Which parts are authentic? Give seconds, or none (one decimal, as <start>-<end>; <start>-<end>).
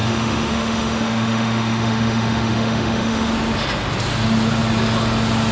3.3-5.5